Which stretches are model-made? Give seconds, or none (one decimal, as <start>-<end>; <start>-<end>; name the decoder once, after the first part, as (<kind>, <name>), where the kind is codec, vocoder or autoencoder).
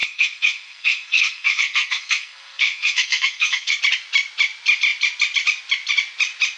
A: 0.0-3.8 (codec, SNAC)